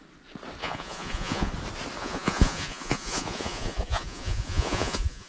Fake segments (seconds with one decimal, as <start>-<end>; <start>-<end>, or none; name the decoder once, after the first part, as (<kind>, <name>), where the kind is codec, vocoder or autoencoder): 0.6-1.5 (vocoder, Vocos); 2.0-5.3